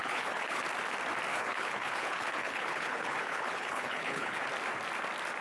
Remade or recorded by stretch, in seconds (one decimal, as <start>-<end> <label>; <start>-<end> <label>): 0.0-0.6 remade; 0.6-1.3 recorded; 1.3-4.5 remade; 4.5-5.4 recorded